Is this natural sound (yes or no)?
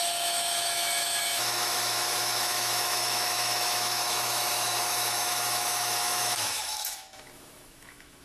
no